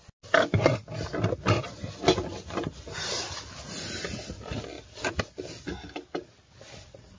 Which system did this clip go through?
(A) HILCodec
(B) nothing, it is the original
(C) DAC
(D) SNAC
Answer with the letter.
B